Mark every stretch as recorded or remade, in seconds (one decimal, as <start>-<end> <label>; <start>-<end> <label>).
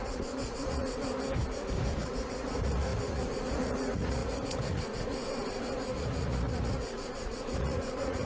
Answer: 0.0-1.1 remade; 1.1-2.0 recorded; 2.0-8.3 remade